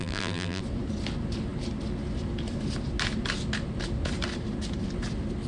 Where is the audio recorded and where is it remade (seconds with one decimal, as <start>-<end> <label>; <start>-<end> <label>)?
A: 0.0-0.6 remade; 0.6-5.5 recorded